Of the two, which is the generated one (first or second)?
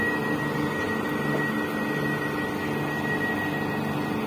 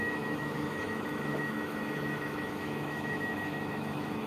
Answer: second